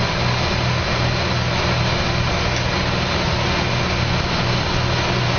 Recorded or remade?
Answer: recorded